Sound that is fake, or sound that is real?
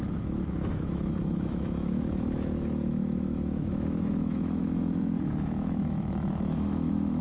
fake